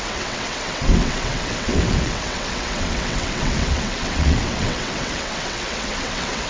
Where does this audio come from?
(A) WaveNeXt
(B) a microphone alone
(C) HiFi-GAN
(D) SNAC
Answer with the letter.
A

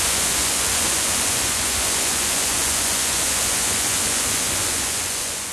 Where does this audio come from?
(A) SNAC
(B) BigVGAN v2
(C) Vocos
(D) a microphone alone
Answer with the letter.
C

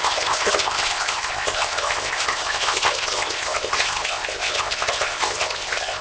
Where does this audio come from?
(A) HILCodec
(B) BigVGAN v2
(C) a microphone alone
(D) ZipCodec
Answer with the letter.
D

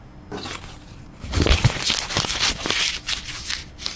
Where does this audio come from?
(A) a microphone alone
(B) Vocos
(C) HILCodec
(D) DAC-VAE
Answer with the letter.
A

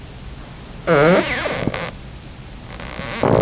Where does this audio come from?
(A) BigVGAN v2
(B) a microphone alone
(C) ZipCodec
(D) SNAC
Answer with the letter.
B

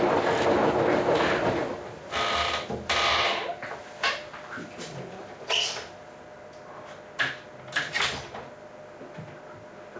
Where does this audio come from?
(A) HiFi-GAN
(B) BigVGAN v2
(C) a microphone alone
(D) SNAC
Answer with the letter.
C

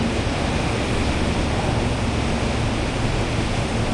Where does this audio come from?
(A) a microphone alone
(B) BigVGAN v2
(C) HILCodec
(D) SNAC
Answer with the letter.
A